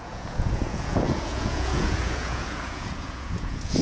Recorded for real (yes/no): no